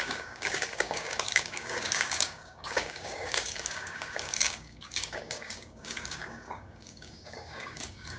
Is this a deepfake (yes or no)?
yes